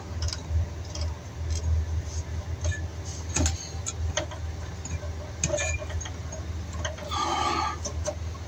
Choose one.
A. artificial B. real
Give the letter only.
B